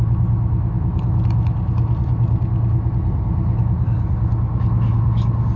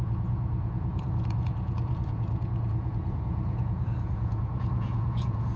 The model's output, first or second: second